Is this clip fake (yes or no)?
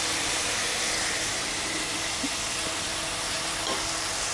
no